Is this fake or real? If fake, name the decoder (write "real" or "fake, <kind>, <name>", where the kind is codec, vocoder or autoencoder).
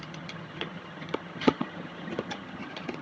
fake, vocoder, HiFi-GAN